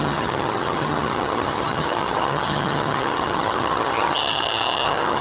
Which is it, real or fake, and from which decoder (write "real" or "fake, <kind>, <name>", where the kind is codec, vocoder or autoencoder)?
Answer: fake, vocoder, HiFi-GAN